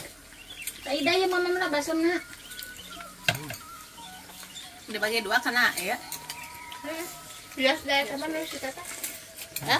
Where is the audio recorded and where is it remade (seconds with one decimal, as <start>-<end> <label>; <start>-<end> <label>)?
0.0-3.7 recorded; 3.7-4.5 remade; 4.5-9.8 recorded